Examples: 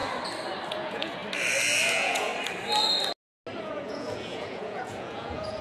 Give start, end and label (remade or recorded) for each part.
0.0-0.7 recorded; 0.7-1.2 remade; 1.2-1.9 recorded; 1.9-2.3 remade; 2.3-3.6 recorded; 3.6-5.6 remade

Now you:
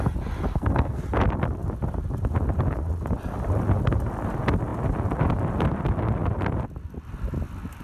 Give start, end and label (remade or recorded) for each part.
0.0-0.5 recorded; 0.5-1.0 remade; 1.0-7.8 recorded

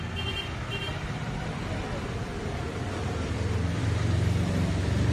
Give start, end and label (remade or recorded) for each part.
0.0-0.9 recorded; 0.9-4.0 remade; 4.0-5.1 recorded

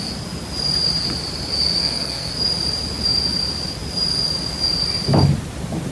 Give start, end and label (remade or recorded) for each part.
0.0-1.8 recorded; 1.8-2.3 remade; 2.3-5.9 recorded

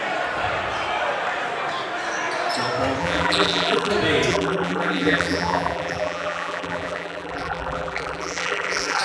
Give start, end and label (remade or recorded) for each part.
0.0-3.0 recorded; 3.0-3.9 remade; 3.9-4.3 recorded; 4.3-9.0 remade

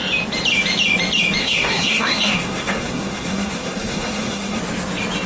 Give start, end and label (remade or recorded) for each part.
0.0-1.4 recorded; 1.4-4.6 remade; 4.6-5.3 recorded

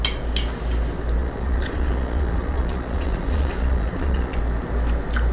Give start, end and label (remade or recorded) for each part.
0.0-1.2 recorded; 1.2-4.4 remade; 4.4-5.3 recorded

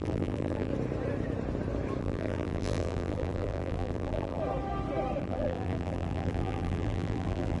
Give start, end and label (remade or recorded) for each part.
0.0-0.7 remade; 0.7-2.0 recorded; 2.0-4.4 remade; 4.4-5.2 recorded; 5.2-7.6 remade